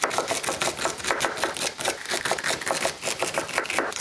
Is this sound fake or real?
real